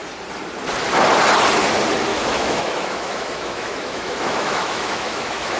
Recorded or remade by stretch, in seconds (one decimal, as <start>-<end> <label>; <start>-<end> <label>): 0.0-2.1 recorded; 2.1-5.6 remade